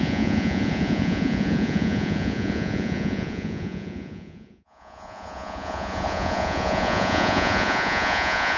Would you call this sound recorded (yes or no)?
no